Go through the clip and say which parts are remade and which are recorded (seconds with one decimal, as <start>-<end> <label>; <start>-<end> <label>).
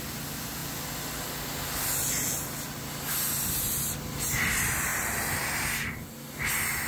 0.0-6.9 recorded